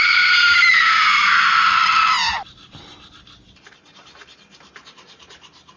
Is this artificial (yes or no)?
no